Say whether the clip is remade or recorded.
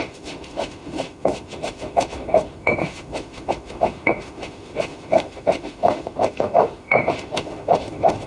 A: remade